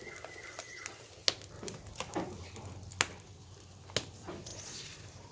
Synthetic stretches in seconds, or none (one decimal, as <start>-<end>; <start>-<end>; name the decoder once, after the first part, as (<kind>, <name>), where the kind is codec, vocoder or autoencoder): 4.5-5.3 (vocoder, BigVGAN v2)